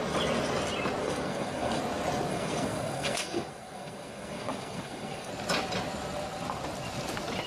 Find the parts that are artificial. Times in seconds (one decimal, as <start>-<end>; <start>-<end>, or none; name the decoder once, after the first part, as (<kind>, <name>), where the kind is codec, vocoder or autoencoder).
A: 1.0-1.8 (codec, SNAC); 2.3-5.3